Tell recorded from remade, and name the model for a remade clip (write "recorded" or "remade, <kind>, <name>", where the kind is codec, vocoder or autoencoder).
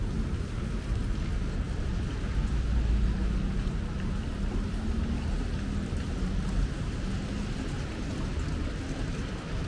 recorded